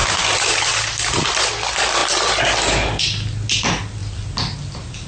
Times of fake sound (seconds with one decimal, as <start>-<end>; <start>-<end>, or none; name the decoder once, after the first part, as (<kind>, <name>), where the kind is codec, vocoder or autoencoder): 0.0-1.5 (vocoder, BigVGAN v2)